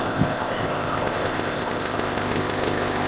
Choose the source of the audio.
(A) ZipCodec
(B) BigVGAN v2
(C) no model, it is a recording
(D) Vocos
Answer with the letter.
A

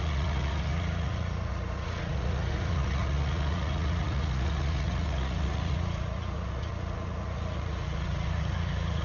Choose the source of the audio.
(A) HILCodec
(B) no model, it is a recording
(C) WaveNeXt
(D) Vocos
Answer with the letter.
D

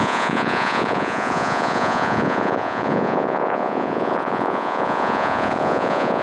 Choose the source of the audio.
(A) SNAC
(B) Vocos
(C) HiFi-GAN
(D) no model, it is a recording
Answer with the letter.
B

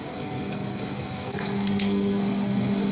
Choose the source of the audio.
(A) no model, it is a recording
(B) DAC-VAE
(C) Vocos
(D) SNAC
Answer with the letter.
D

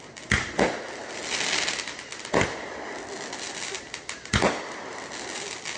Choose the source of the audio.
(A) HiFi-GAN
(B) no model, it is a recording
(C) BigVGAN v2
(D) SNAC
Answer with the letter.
B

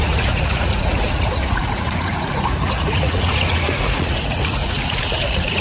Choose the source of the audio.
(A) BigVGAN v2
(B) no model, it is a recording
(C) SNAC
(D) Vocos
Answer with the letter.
D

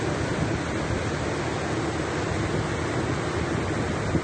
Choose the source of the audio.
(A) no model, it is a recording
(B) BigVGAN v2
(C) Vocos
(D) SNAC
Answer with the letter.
A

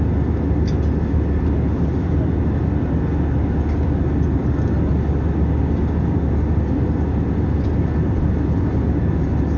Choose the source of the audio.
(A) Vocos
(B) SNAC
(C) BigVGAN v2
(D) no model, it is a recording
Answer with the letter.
D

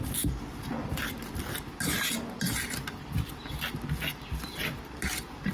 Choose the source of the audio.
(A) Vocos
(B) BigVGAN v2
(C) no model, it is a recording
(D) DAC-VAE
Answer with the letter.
C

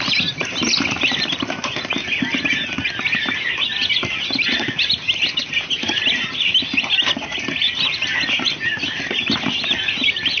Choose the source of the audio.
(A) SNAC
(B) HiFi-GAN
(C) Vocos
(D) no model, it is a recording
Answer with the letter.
D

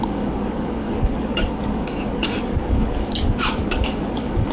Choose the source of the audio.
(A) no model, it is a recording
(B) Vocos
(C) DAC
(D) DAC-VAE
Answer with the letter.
C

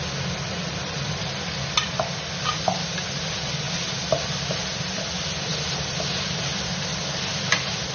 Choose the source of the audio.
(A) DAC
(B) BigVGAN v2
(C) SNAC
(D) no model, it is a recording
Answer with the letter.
D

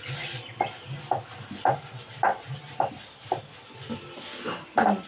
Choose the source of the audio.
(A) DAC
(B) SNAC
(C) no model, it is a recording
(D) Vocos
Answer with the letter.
C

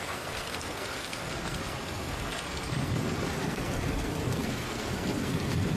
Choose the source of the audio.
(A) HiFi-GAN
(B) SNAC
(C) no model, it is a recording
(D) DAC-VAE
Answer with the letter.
B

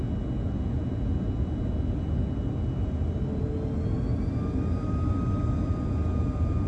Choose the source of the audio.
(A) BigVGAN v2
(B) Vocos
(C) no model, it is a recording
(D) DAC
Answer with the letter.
C